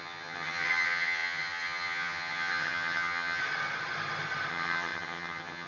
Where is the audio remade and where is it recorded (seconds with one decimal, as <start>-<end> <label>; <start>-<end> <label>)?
0.0-3.4 remade; 3.4-4.5 recorded; 4.5-5.7 remade